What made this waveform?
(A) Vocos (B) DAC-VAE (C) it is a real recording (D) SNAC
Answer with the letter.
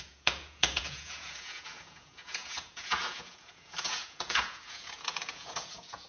A